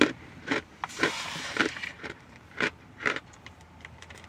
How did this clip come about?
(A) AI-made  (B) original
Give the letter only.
A